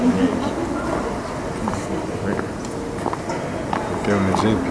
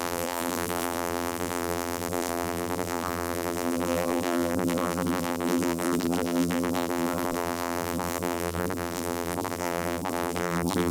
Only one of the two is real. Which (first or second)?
first